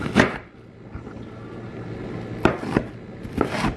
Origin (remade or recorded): recorded